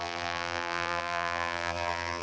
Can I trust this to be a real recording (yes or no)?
no